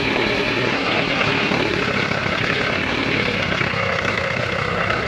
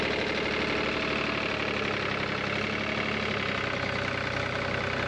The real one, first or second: second